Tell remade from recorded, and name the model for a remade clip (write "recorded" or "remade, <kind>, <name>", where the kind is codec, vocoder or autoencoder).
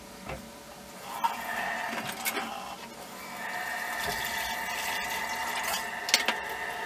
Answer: recorded